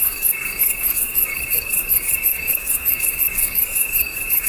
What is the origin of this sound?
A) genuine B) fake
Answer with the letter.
B